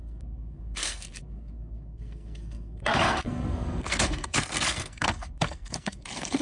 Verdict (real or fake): fake